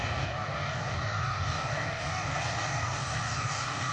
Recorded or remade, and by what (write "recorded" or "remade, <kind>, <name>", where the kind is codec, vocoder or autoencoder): remade, codec, DAC